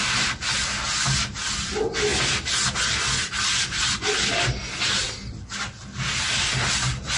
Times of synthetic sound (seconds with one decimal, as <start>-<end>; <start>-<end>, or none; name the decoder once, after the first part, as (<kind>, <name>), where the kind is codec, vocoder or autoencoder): none